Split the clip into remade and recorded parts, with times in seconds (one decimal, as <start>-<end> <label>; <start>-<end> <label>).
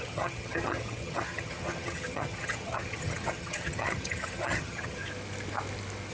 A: 0.0-5.0 remade; 5.0-6.1 recorded